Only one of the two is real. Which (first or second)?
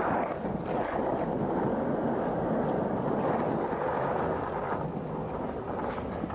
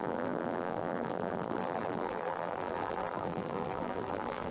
first